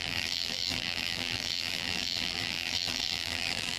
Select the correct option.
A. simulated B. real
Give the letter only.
A